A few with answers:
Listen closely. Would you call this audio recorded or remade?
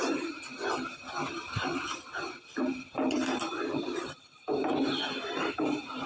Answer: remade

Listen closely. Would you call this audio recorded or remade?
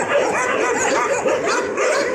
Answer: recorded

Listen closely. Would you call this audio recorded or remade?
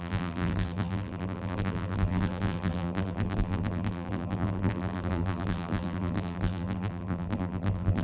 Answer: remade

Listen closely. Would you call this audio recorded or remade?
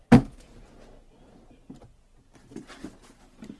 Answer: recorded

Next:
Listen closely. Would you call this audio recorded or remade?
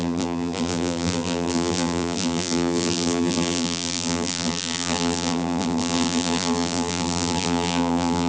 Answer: remade